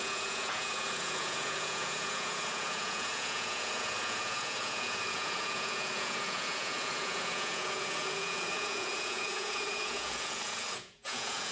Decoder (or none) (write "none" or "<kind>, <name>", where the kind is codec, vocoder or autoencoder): vocoder, Vocos